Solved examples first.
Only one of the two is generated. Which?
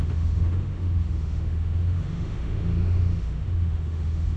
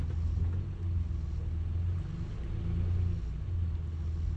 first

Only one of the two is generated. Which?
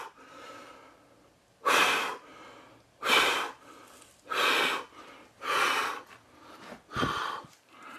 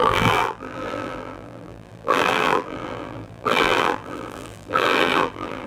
second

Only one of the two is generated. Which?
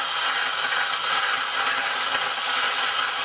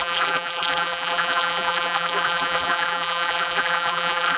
second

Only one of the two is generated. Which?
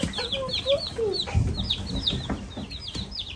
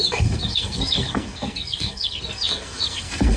second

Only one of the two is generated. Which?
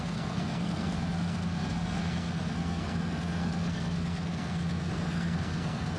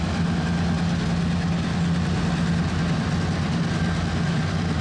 first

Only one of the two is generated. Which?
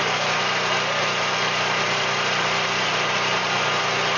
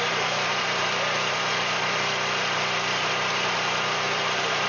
second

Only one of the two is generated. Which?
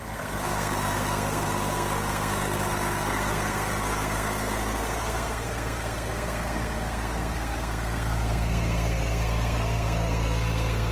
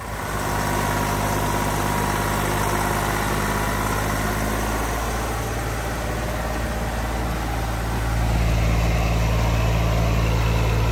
first